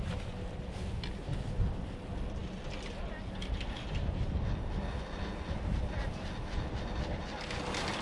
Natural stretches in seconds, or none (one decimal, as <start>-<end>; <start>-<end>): 0.0-8.0

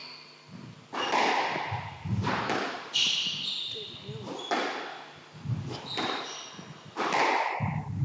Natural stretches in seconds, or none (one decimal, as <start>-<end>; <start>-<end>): 0.0-1.6; 2.4-8.0

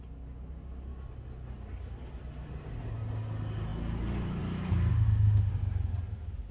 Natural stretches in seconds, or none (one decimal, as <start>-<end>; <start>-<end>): 0.0-4.9; 5.5-6.5